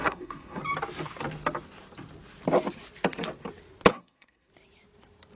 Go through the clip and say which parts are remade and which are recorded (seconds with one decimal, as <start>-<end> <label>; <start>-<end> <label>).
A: 0.0-0.6 remade; 0.6-3.9 recorded; 3.9-4.5 remade; 4.5-5.4 recorded